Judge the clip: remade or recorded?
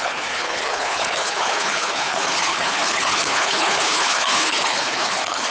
remade